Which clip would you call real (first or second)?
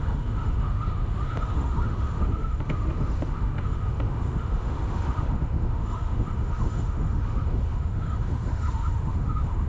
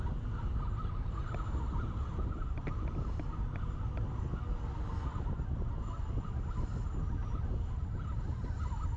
second